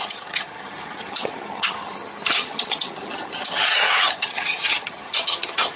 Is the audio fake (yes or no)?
yes